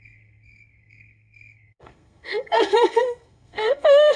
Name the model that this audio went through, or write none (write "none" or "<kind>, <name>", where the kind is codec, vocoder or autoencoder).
codec, SNAC